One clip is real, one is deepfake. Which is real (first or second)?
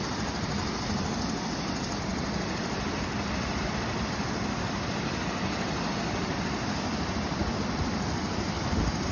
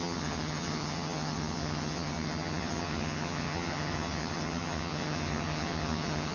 first